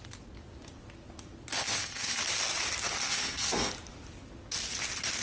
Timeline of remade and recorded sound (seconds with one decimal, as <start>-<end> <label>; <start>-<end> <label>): 0.0-1.6 recorded; 1.6-2.2 remade; 2.2-3.0 recorded; 3.0-3.7 remade; 3.7-5.2 recorded

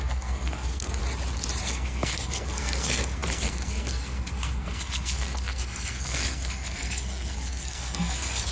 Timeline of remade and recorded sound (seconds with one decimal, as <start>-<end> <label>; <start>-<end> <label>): 0.0-1.0 remade; 1.0-1.6 recorded; 1.6-8.5 remade

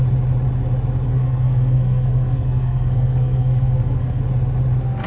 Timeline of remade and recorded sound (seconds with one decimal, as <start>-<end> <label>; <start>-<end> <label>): 0.0-1.1 recorded; 1.1-4.2 remade; 4.2-5.1 recorded